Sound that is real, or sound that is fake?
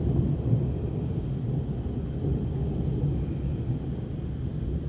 real